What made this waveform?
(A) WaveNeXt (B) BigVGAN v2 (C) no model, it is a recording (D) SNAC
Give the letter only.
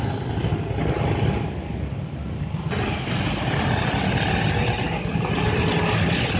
C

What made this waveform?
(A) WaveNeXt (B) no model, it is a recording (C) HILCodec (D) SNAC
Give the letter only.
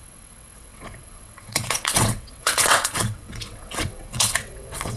A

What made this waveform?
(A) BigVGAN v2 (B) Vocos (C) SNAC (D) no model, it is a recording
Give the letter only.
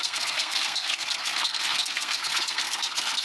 C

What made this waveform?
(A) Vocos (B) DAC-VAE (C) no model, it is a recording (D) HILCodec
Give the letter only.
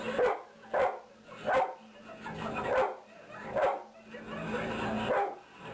C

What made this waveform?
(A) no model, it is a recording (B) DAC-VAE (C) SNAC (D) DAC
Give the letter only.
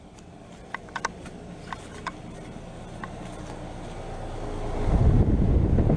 A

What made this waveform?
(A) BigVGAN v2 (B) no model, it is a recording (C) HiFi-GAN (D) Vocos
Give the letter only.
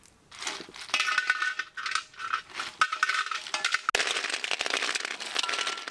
B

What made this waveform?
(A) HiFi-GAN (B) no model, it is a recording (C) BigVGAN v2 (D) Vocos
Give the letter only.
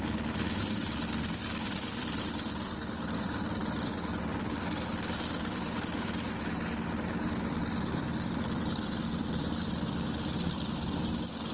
C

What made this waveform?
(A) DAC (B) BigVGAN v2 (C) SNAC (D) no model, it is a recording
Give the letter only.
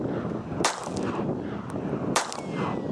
D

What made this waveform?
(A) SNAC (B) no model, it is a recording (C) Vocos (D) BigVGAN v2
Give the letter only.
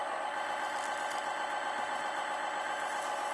B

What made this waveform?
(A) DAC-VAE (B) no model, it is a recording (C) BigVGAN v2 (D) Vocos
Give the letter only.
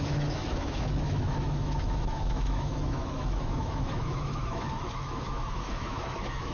A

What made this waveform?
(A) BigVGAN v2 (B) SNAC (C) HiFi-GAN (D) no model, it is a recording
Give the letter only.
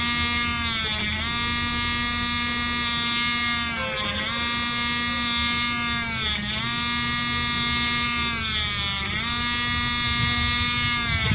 D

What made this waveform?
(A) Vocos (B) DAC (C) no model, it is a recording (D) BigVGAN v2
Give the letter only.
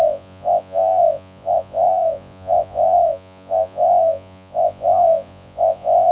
A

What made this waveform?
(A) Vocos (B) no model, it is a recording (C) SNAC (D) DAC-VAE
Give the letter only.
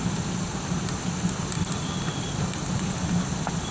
B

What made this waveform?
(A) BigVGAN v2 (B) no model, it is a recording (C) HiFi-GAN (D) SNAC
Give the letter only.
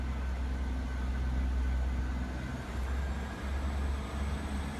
B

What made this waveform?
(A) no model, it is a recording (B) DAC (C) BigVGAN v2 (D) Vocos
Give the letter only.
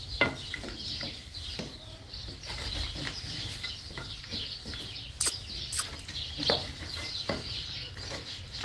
A